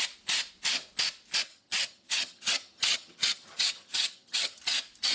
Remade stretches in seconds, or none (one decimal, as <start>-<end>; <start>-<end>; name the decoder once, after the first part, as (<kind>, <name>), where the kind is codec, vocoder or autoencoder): 1.5-4.6 (vocoder, HiFi-GAN)